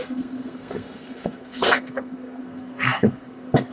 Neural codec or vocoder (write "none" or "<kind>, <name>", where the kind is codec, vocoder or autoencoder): codec, SNAC